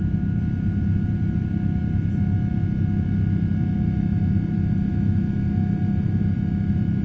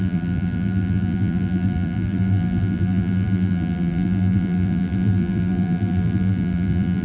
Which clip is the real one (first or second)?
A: first